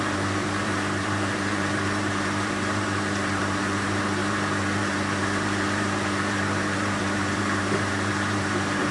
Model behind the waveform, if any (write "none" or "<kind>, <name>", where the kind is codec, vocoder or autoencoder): vocoder, BigVGAN v2